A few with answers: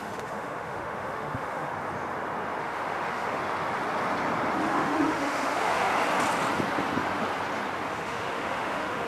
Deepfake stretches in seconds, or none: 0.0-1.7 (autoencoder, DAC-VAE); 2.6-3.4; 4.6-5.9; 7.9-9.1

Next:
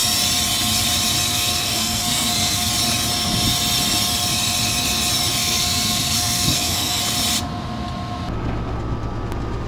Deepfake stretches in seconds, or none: 1.3-2.7 (codec, SNAC); 5.4-7.0

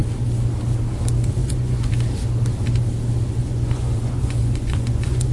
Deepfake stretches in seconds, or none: 1.4-1.9 (vocoder, Vocos); 3.4-5.3

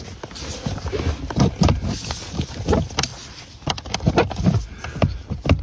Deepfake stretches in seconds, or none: none